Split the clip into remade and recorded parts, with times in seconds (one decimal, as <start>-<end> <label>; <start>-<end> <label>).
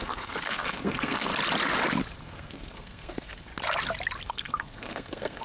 0.0-1.3 remade; 1.3-2.2 recorded; 2.2-3.5 remade; 3.5-4.3 recorded; 4.3-5.4 remade